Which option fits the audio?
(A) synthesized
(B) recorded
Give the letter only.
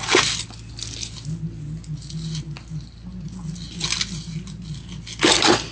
B